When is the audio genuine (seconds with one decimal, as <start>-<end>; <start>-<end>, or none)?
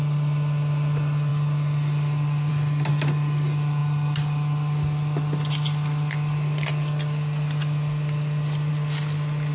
0.0-9.5